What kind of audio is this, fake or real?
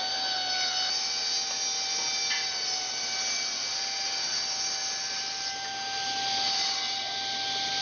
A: real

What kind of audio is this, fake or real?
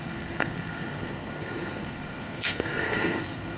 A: fake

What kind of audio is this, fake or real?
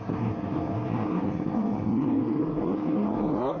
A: fake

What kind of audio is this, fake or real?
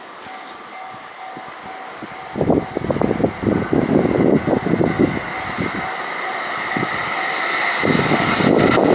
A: real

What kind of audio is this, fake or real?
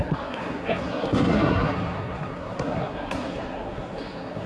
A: fake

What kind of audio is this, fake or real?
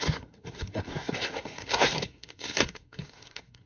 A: fake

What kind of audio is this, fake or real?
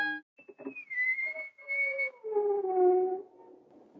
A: real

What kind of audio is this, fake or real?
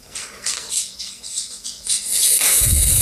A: fake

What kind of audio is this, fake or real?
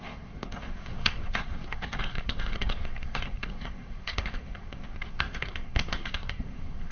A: fake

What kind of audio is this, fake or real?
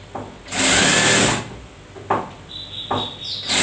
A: real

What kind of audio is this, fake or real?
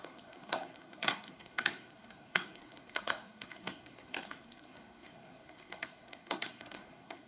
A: fake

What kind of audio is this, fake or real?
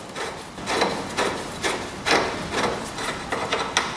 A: real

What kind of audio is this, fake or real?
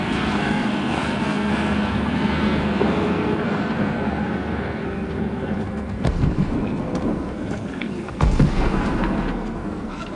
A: fake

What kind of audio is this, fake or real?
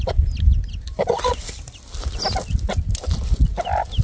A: real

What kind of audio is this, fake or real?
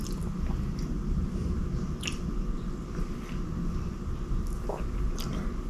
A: real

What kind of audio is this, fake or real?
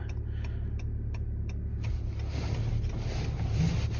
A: real